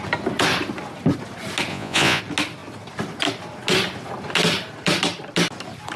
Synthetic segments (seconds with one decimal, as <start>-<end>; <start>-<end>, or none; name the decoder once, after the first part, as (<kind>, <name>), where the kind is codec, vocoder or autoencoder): 1.7-2.2 (vocoder, Vocos)